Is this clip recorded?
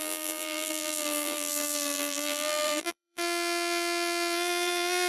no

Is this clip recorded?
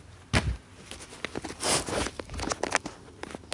yes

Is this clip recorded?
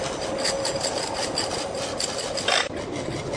yes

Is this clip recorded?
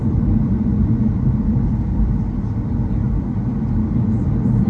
no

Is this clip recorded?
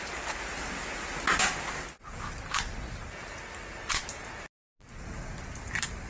yes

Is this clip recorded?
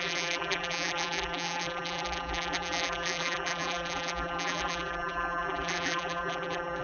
no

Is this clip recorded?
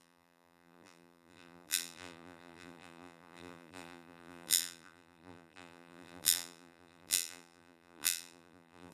no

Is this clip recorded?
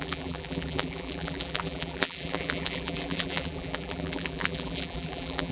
no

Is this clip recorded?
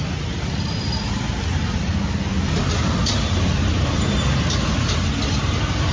yes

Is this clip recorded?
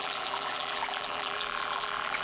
no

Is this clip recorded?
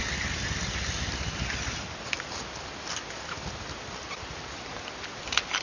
yes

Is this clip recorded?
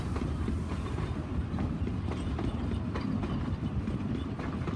no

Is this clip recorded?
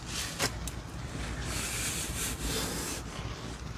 yes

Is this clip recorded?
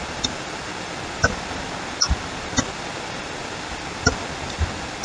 yes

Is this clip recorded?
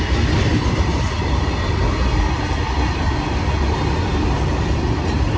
yes